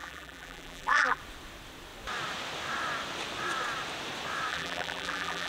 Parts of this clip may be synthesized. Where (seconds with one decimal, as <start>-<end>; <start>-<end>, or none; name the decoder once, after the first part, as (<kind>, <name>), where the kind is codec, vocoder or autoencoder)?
0.0-1.2 (vocoder, BigVGAN v2); 4.5-5.5